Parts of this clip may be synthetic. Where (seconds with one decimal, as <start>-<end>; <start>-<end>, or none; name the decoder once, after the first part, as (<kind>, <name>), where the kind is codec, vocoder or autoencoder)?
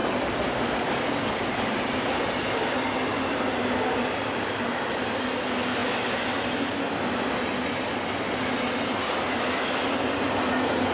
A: 3.1-4.6 (vocoder, BigVGAN v2)